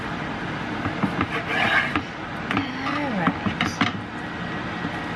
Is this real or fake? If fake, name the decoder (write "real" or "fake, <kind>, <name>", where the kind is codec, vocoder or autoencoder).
real